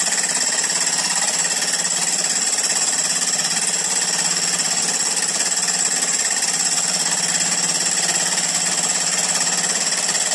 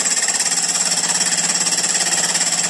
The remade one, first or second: first